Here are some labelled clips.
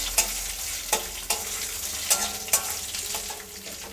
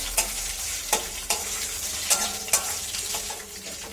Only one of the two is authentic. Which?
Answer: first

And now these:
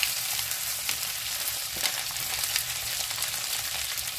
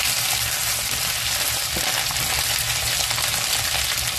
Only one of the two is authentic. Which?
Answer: second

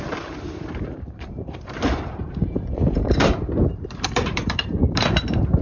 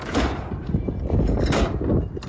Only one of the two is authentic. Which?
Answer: second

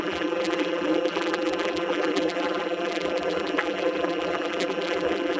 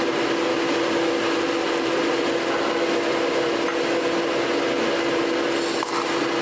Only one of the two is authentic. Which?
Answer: second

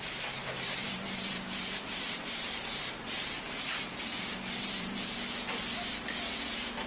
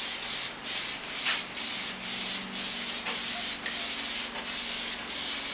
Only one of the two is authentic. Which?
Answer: second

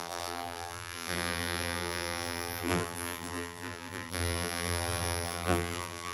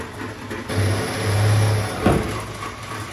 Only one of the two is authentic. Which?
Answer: second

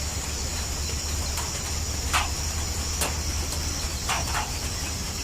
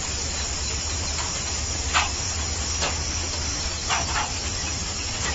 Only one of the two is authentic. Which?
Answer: first